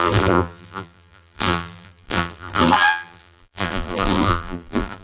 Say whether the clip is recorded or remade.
remade